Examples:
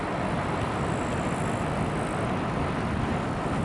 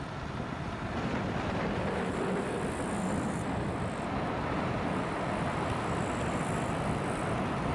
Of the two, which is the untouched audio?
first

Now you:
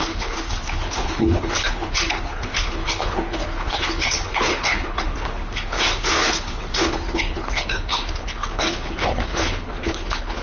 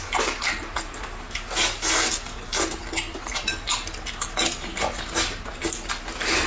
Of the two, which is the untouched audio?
second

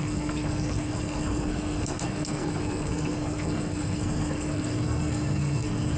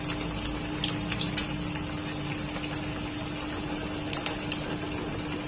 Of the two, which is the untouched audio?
second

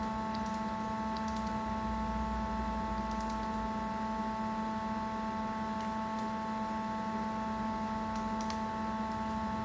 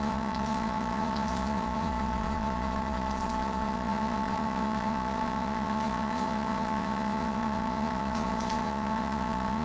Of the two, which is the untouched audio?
first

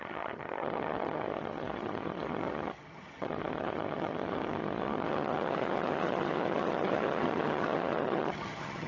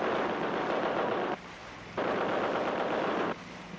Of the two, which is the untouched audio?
second